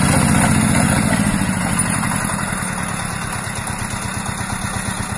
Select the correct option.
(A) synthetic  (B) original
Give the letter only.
B